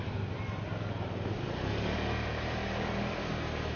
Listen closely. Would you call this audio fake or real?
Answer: real